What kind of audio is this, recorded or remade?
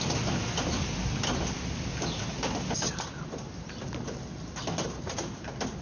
recorded